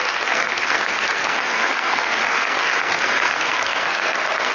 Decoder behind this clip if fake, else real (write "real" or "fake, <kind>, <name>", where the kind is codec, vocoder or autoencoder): fake, codec, SNAC